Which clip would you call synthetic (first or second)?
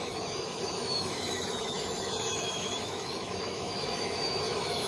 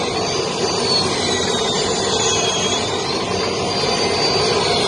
first